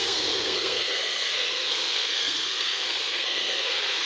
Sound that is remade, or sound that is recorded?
remade